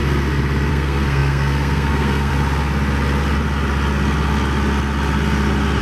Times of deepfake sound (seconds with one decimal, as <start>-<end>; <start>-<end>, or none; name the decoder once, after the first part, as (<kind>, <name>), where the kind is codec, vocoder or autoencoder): 0.7-2.3 (codec, SNAC)